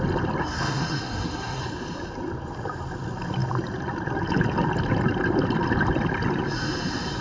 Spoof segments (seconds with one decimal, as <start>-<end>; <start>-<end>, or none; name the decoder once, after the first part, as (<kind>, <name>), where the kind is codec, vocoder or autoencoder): 0.4-1.6 (codec, SNAC)